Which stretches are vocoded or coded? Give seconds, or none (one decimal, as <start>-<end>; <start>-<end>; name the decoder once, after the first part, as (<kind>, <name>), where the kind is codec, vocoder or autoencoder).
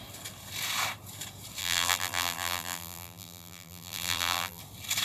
1.6-4.6 (vocoder, BigVGAN v2)